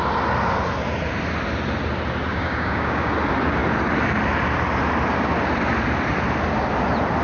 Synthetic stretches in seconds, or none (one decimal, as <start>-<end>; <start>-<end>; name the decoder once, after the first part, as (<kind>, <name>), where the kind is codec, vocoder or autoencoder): 2.3-3.1 (codec, DAC)